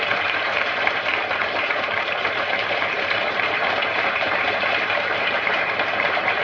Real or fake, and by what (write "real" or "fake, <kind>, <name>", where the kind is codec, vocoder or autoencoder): fake, vocoder, BigVGAN v2